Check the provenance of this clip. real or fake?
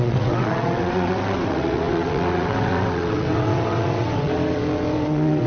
fake